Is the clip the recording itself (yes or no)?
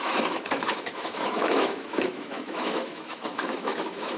no